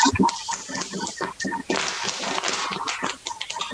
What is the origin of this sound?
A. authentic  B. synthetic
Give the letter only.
A